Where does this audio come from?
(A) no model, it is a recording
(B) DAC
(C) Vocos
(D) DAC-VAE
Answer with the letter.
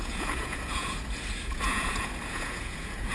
C